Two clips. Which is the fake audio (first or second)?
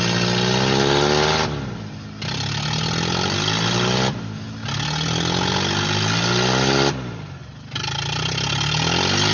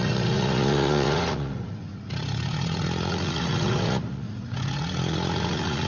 second